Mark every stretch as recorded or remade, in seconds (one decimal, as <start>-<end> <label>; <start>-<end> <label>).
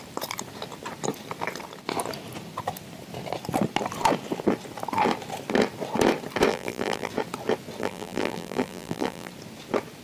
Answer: 0.0-6.5 recorded; 6.5-7.1 remade; 7.1-7.8 recorded; 7.8-9.3 remade; 9.3-10.0 recorded